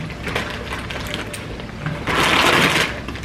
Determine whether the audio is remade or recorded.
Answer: recorded